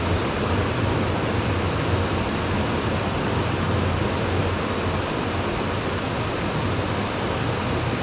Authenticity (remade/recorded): remade